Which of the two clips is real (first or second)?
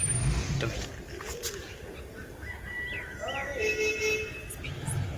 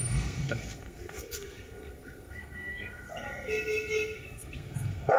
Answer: first